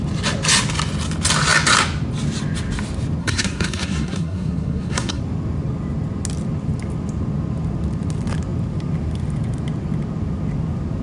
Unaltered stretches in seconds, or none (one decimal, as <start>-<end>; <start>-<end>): 0.0-3.2; 5.2-11.0